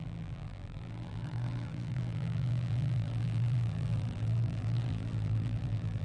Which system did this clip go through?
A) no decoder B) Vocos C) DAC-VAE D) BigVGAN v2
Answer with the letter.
D